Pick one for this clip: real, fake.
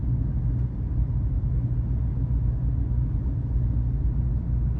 real